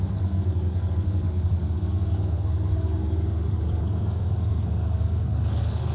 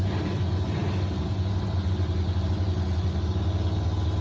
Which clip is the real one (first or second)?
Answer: second